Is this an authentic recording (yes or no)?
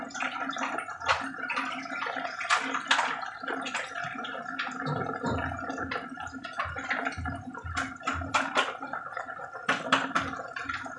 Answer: yes